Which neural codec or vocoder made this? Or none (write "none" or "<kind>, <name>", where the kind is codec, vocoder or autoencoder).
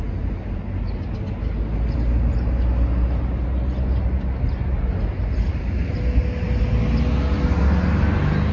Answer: none